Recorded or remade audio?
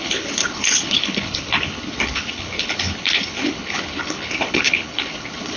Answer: remade